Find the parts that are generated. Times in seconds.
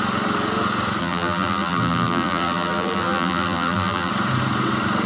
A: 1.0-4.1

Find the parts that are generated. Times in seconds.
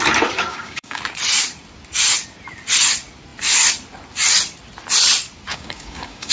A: 0.5-1.0; 5.5-6.3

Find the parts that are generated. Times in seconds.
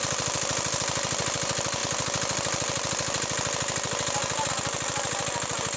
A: none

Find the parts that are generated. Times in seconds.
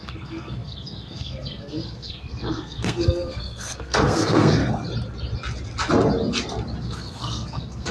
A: 0.0-4.6; 6.8-7.9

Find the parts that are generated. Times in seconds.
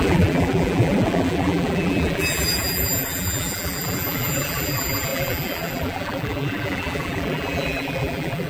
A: 0.0-8.5